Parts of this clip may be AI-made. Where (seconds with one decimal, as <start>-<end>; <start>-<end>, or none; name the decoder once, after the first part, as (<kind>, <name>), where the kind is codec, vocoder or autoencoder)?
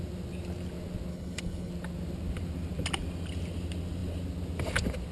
1.1-1.7 (codec, HILCodec)